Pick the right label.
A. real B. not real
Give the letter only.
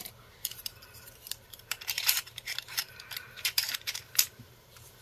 B